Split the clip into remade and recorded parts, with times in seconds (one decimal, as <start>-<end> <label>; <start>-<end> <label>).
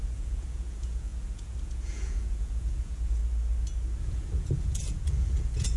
0.0-3.2 remade; 3.2-4.0 recorded; 4.0-5.8 remade